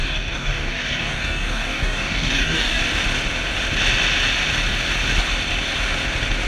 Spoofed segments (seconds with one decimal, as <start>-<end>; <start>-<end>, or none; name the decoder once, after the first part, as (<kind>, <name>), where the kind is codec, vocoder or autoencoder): 0.0-2.8 (codec, DAC)